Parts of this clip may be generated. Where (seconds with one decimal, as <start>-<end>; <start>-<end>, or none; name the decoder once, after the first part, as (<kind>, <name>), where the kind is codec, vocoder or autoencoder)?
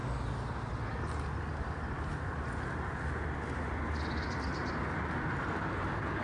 none